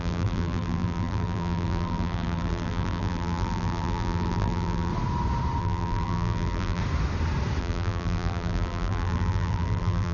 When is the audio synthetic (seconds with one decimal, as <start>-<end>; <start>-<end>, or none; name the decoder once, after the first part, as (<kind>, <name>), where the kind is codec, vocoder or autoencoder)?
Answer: 0.0-4.9 (vocoder, BigVGAN v2); 5.6-6.8; 7.6-10.1